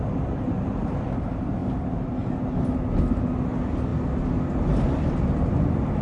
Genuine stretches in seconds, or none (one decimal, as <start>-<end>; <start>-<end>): 0.0-6.0